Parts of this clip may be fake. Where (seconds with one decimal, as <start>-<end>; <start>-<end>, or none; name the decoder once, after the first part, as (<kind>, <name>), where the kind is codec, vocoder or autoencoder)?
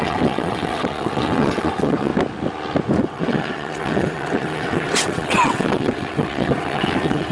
0.0-2.1 (vocoder, WaveNeXt); 3.0-7.3